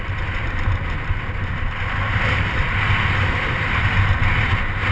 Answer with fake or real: real